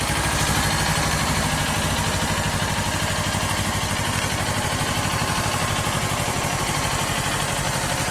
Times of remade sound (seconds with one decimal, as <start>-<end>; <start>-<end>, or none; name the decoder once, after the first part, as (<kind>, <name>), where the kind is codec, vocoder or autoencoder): 0.9-1.9 (vocoder, BigVGAN v2)